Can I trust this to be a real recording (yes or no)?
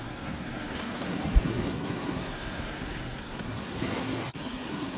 no